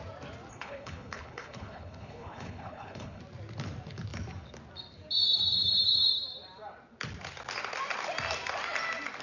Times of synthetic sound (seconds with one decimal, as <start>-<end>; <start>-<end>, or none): 0.5-3.2